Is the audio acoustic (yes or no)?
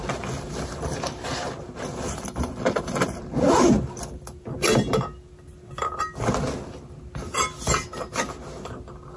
yes